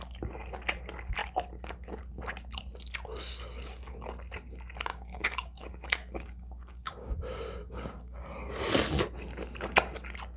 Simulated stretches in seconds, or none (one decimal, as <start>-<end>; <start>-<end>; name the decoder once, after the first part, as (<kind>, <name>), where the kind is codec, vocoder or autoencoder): 4.9-7.1 (codec, DAC); 7.6-8.5

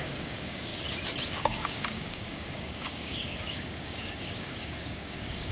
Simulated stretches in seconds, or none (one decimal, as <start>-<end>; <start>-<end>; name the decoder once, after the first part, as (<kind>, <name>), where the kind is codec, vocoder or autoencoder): 0.0-0.7 (codec, DAC); 1.3-5.5

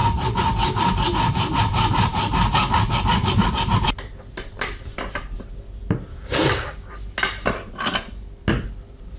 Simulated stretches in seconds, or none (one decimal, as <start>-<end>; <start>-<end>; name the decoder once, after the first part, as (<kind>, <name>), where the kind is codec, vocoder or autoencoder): 6.1-6.9 (codec, DAC)

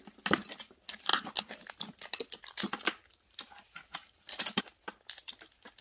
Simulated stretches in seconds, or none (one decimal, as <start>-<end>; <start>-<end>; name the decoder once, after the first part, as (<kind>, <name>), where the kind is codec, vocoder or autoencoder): none